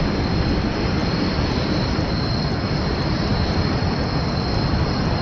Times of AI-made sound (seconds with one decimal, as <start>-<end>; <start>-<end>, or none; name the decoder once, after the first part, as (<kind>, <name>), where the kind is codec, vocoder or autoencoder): none